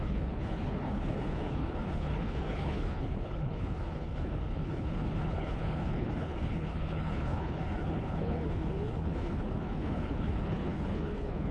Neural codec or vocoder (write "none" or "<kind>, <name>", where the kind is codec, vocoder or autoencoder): codec, HILCodec